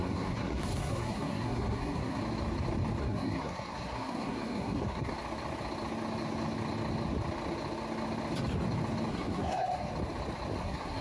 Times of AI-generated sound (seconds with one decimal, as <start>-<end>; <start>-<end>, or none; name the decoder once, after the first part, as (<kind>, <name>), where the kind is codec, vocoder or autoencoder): 0.0-2.2 (codec, SNAC); 3.0-5.1; 9.1-9.9; 10.6-11.0